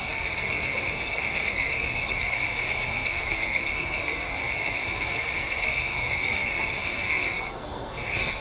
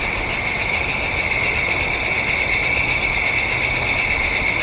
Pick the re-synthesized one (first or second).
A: first